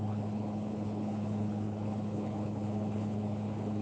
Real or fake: fake